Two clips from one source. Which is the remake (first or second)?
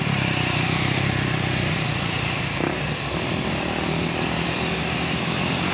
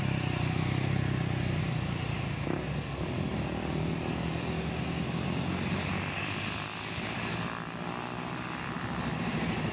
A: first